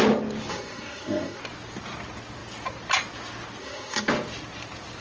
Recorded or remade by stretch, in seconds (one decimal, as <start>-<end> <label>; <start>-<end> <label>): 0.0-0.5 recorded; 0.5-1.4 remade; 1.4-3.6 recorded; 3.6-4.1 remade; 4.1-5.0 recorded